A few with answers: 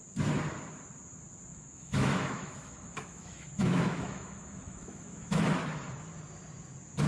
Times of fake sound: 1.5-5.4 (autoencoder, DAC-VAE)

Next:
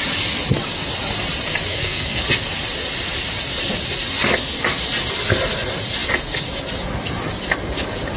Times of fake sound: 1.7-2.2 (codec, SNAC)

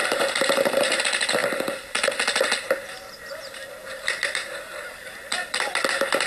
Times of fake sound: 0.0-1.0 (vocoder, BigVGAN v2); 3.9-5.0

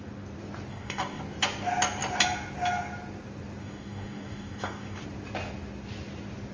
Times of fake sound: 0.7-1.2 (codec, DAC); 3.6-5.0

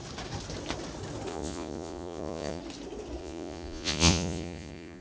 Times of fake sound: 1.3-2.6 (vocoder, Vocos); 3.2-5.0

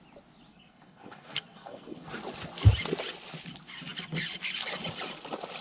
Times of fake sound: 0.5-2.1 (codec, SNAC)

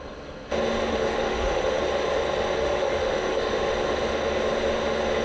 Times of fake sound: 0.9-1.8 (autoencoder, DAC-VAE); 2.6-3.6

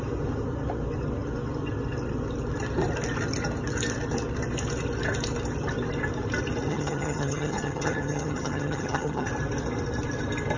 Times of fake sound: 6.7-9.3 (vocoder, HiFi-GAN)